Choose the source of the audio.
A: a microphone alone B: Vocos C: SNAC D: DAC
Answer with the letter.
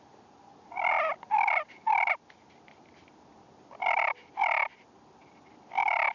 A